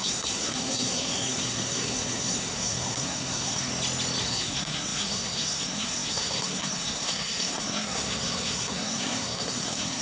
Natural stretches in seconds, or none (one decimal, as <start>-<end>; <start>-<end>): 3.7-4.2